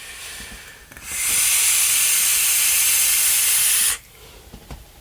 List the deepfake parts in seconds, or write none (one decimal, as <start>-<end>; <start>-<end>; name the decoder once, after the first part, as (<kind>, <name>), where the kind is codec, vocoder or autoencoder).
none